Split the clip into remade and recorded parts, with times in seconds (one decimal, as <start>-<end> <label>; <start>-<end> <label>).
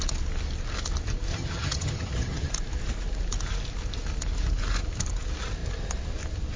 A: 0.0-1.3 recorded; 1.3-2.5 remade; 2.5-6.6 recorded